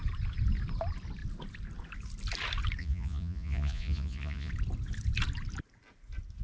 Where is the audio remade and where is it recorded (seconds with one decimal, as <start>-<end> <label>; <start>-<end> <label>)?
0.0-2.8 recorded; 2.8-4.5 remade; 4.5-6.4 recorded